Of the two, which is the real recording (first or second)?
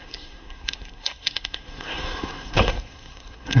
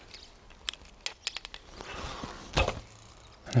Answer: second